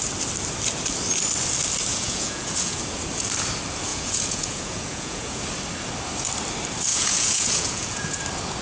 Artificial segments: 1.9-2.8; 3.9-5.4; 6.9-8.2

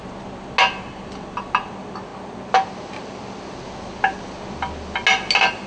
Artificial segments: none

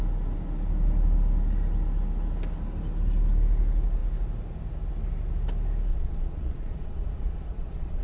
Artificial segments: 5.9-8.0

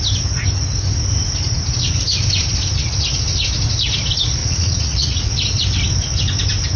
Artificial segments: 4.4-5.3

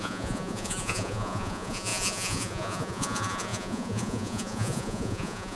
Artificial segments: 0.0-5.6

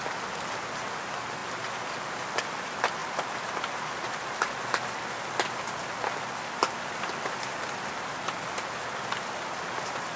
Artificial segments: none